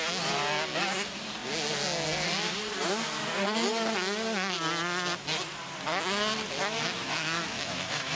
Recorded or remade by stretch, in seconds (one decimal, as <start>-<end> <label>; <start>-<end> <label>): 0.0-6.5 recorded; 6.5-8.1 remade